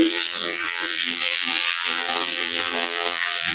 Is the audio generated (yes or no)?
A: yes